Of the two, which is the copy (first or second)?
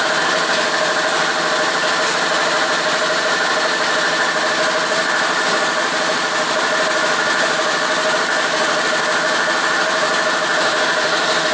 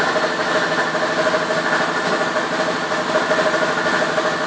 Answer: first